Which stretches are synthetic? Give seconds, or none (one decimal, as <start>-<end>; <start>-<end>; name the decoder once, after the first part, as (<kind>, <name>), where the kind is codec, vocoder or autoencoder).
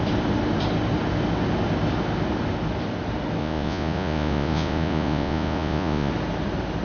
3.4-6.1 (vocoder, Vocos)